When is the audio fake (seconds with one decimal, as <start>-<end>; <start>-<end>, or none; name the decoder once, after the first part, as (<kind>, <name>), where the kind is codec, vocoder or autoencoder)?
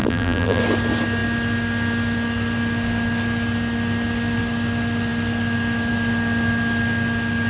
0.0-0.6 (vocoder, BigVGAN v2)